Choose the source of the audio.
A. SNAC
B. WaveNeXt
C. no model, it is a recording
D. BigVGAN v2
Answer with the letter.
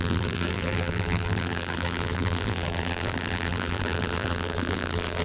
D